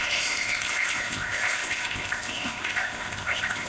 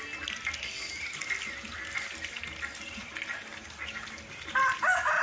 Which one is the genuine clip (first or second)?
second